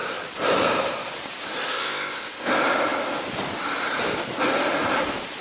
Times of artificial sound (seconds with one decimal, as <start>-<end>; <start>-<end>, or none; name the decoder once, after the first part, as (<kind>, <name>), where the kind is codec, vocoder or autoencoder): 1.7-2.5 (codec, ZipCodec)